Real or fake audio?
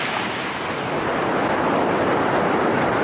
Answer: real